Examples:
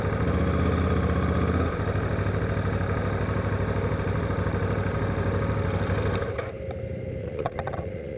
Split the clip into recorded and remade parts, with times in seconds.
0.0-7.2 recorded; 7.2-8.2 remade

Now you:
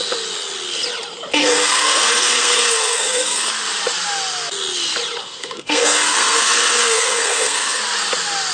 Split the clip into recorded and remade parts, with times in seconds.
0.0-1.4 recorded; 1.4-3.5 remade; 3.5-5.2 recorded; 5.2-7.8 remade; 7.8-8.5 recorded

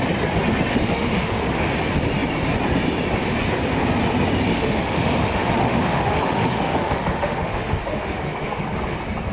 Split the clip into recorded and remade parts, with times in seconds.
0.0-0.7 recorded; 0.7-1.7 remade; 1.7-4.5 recorded; 4.5-8.6 remade; 8.6-9.3 recorded